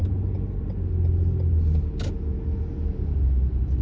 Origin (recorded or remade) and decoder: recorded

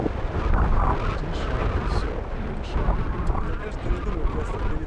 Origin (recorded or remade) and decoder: recorded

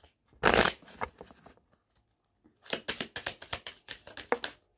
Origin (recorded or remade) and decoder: recorded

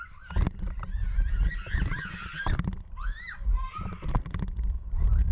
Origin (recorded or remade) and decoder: recorded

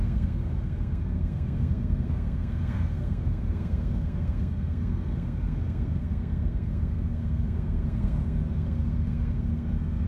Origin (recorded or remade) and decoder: remade, codec, SNAC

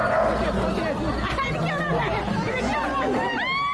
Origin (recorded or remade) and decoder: recorded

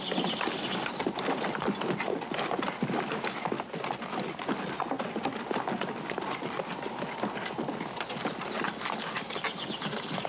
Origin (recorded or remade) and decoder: recorded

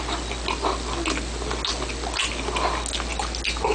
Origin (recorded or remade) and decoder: recorded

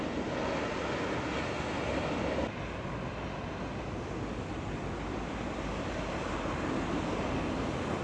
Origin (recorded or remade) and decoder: recorded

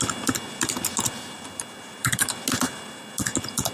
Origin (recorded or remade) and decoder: recorded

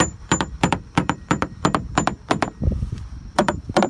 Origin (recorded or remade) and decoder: remade, vocoder, BigVGAN v2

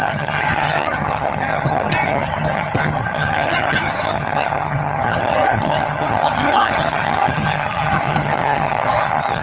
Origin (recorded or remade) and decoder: remade, vocoder, HiFi-GAN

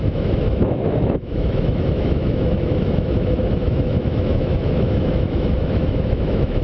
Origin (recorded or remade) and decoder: remade, autoencoder, DAC-VAE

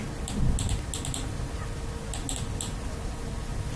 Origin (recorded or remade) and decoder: recorded